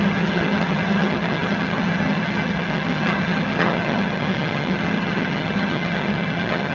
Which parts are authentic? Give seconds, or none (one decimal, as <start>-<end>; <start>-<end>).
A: none